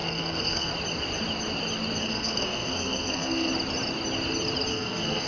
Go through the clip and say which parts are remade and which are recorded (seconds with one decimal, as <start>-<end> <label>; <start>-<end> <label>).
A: 0.0-0.7 remade; 0.7-2.0 recorded; 2.0-3.5 remade; 3.5-4.7 recorded; 4.7-5.3 remade